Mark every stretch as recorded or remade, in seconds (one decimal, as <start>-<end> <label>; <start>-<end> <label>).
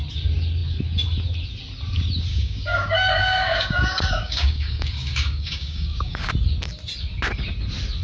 0.0-2.3 recorded; 2.3-6.3 remade; 6.3-8.0 recorded